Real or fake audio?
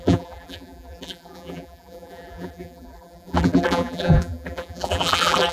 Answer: fake